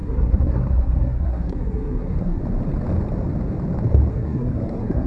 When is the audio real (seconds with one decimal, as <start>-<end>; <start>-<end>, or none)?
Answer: 2.4-4.1